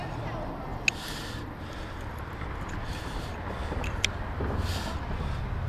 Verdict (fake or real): real